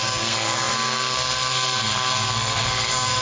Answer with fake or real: fake